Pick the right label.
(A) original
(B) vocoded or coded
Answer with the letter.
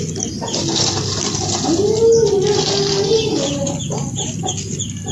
A